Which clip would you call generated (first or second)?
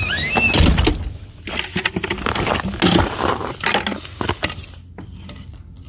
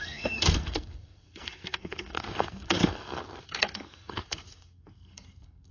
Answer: second